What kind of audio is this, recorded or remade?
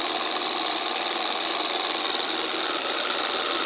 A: remade